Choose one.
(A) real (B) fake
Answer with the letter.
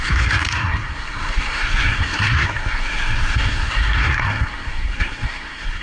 B